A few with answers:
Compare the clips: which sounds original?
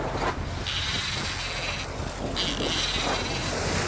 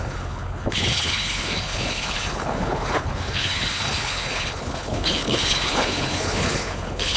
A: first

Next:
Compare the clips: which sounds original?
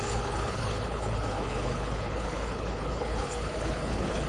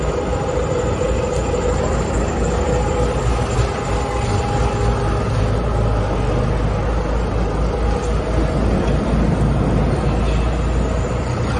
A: second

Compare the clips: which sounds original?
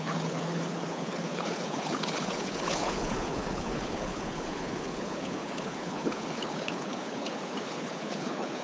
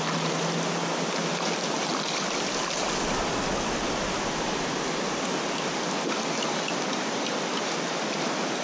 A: second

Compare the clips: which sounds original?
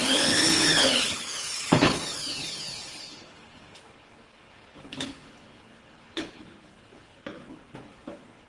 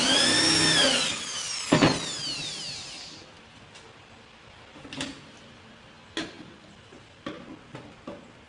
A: second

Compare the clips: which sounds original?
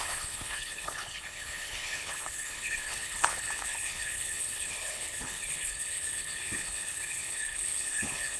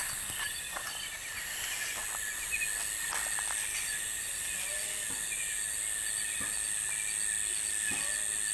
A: second